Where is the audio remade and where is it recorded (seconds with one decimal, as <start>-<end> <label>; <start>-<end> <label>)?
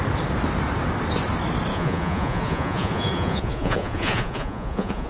0.0-1.7 recorded; 1.7-5.1 remade